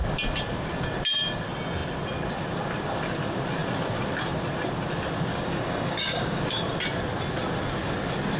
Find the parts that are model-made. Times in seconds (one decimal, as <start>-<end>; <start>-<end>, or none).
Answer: 5.3-6.4